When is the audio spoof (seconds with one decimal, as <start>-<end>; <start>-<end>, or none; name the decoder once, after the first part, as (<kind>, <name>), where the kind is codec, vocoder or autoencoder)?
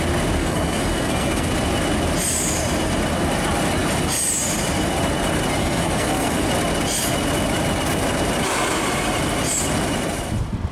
0.4-1.5 (codec, SNAC); 5.6-6.5